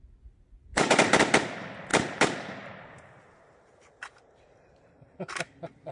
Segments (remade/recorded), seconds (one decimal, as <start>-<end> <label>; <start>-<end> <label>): 0.0-0.7 recorded; 0.7-1.2 remade; 1.2-1.9 recorded; 1.9-5.4 remade; 5.4-5.9 recorded